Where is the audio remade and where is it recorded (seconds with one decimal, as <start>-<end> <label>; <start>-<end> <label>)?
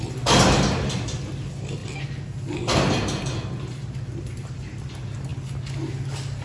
0.0-6.4 recorded